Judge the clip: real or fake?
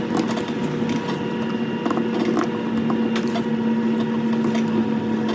real